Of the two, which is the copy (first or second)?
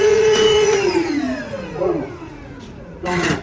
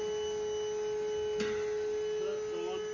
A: first